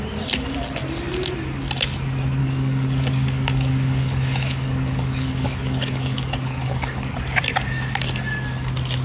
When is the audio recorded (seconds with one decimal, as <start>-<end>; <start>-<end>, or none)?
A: 0.0-2.4; 7.2-9.0